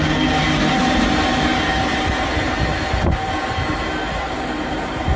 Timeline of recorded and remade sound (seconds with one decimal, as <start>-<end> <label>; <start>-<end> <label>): 0.0-5.2 recorded